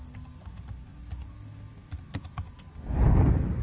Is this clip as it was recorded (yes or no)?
yes